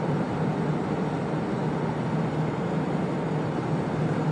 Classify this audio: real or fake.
real